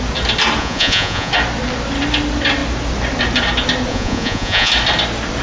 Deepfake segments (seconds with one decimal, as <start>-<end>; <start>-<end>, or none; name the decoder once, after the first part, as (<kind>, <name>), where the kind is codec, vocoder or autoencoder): 0.6-1.3 (vocoder, Vocos); 3.9-4.7